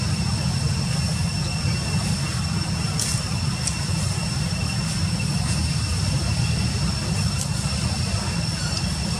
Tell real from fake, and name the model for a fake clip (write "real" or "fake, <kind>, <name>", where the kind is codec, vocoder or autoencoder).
real